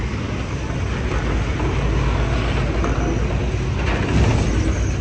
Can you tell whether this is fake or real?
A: real